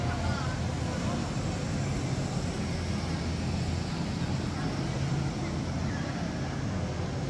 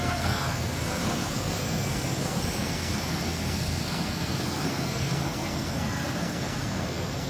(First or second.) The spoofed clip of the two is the second